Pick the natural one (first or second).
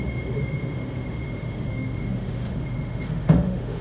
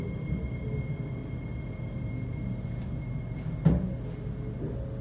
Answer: second